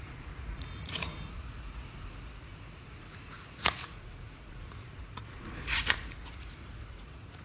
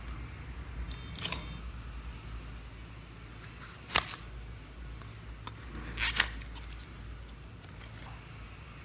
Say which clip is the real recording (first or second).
second